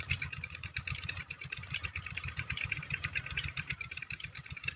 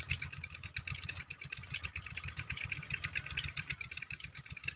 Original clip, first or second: second